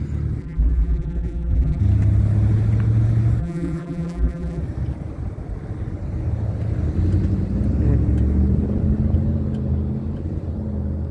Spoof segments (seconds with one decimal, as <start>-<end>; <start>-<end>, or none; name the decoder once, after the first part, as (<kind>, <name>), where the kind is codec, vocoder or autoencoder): 0.4-1.8 (vocoder, BigVGAN v2); 3.4-4.6